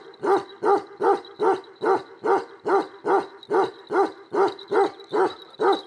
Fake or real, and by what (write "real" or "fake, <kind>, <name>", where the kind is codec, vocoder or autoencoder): real